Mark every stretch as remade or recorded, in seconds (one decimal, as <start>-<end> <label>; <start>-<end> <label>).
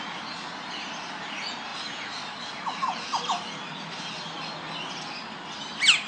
0.0-6.1 recorded